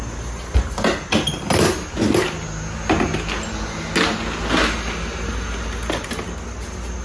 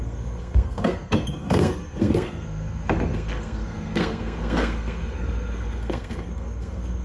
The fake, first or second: second